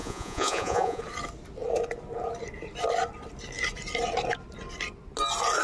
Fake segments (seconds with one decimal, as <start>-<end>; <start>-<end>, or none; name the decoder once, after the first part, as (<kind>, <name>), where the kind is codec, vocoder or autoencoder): 0.0-1.0 (vocoder, Vocos)